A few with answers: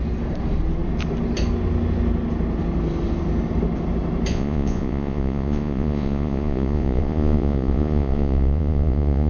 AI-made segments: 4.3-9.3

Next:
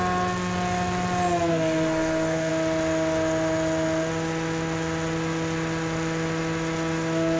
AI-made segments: 1.5-2.5

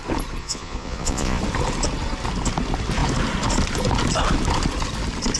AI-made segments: 0.4-1.4

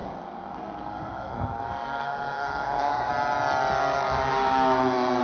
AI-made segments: 0.0-3.1; 3.8-5.2